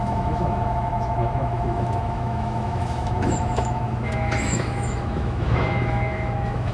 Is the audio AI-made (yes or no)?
yes